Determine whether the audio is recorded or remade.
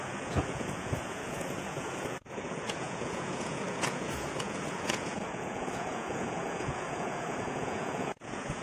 remade